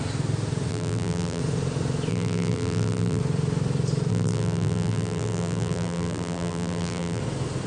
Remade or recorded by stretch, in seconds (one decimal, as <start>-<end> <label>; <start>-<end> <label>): 0.0-0.7 recorded; 0.7-1.4 remade; 1.4-2.1 recorded; 2.1-3.2 remade; 3.2-4.1 recorded; 4.1-7.2 remade; 7.2-7.7 recorded